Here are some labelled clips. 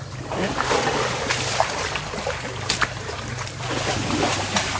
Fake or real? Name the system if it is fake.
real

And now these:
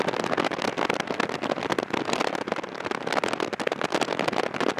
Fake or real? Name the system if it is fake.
real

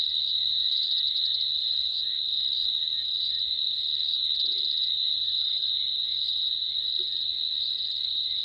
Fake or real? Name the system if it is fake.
real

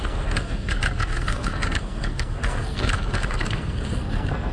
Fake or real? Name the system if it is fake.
fake, codec, SNAC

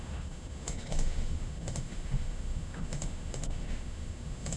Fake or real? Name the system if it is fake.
fake, autoencoder, DAC-VAE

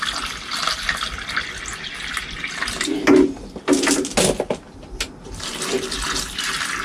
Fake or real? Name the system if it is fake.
real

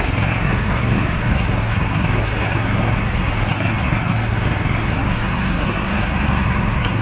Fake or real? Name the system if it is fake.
fake, codec, SNAC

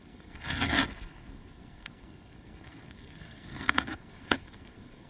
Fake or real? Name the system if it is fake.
fake, codec, SNAC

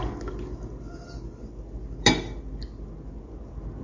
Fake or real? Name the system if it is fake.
real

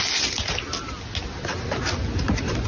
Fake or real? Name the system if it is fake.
real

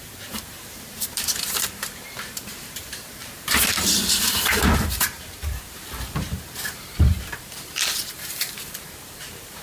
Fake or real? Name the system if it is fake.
fake, vocoder, BigVGAN v2